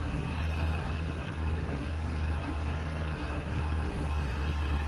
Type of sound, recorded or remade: remade